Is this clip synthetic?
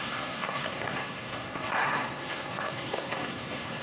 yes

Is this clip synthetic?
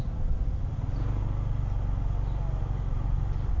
no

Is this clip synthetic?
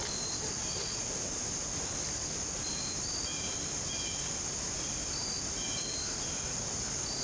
no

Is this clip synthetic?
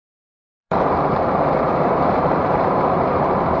yes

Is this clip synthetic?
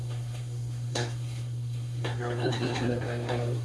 yes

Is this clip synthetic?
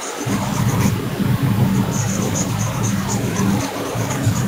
yes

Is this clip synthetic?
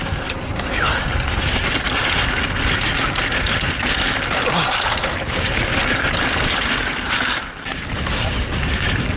no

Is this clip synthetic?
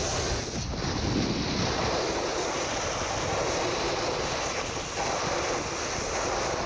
no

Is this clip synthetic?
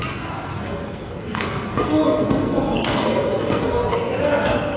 yes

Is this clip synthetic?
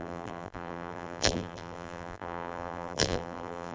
yes